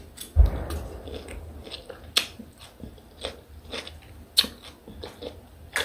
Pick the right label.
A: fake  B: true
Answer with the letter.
B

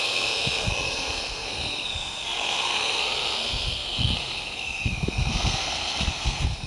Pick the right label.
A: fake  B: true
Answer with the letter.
A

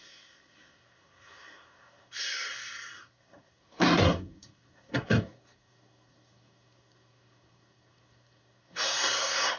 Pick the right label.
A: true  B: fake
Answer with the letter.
B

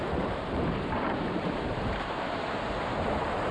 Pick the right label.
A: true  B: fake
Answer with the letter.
B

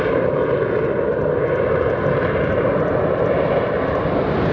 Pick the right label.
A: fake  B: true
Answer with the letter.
B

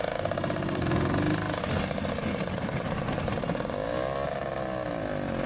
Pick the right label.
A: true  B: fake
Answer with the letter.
A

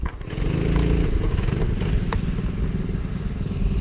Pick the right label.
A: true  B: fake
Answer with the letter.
A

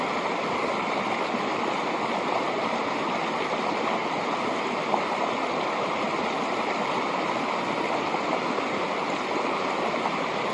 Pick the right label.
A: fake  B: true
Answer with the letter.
B